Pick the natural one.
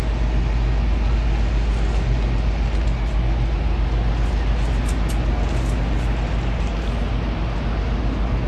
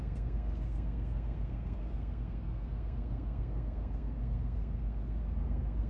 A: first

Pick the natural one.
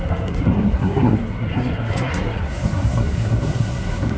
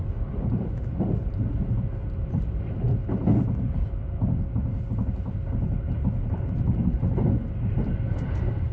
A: second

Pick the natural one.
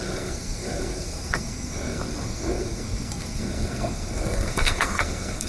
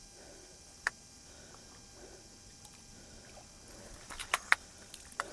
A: second